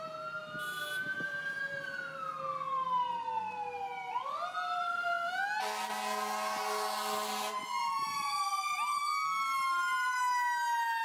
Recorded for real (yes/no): yes